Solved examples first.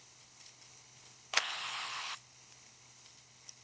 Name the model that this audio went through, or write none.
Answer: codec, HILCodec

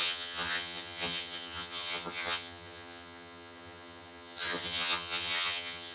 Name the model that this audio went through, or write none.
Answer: vocoder, HiFi-GAN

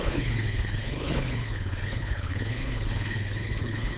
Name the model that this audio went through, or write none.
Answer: codec, HILCodec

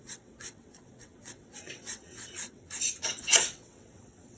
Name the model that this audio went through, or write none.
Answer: vocoder, WaveNeXt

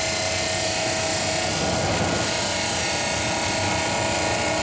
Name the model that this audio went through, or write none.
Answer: none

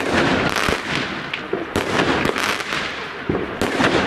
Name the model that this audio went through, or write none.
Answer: none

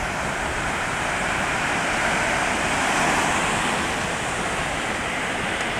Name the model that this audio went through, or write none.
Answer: none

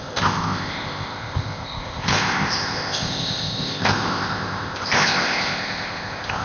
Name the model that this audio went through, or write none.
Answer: codec, ZipCodec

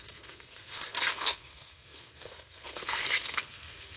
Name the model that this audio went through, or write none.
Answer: codec, SNAC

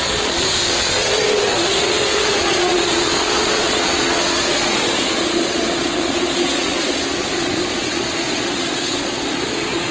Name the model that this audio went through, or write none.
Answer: vocoder, Vocos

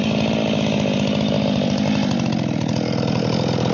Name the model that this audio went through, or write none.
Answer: none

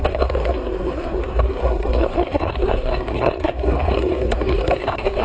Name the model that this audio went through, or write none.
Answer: codec, SNAC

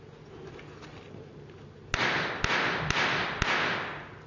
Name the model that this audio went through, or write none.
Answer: none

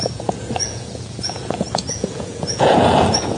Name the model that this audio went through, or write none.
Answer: vocoder, Vocos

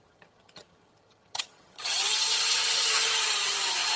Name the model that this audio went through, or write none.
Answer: vocoder, HiFi-GAN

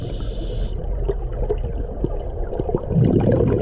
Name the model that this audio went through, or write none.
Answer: none